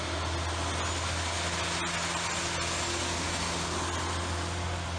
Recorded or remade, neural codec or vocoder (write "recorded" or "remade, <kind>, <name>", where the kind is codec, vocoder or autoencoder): recorded